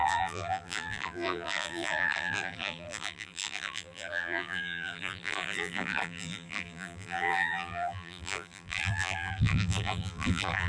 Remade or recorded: remade